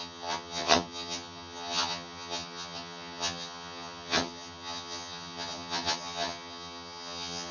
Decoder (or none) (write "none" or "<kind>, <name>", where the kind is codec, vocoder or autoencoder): vocoder, HiFi-GAN